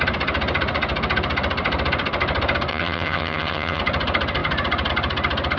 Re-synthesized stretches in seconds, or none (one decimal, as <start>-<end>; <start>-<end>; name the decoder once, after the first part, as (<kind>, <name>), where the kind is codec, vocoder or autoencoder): 2.7-3.8 (vocoder, HiFi-GAN)